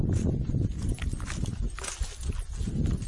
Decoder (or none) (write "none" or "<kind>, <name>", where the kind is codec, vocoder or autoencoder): none